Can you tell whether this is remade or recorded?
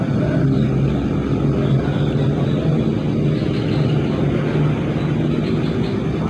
recorded